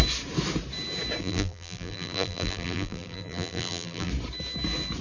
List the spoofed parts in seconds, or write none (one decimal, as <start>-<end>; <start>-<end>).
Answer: 1.2-4.1